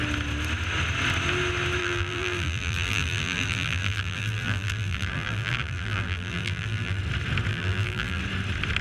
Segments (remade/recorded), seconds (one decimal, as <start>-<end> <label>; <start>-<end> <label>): 0.0-1.8 recorded; 1.8-7.0 remade; 7.0-7.5 recorded; 7.5-8.2 remade; 8.2-8.8 recorded